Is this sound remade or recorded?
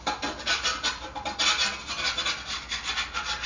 recorded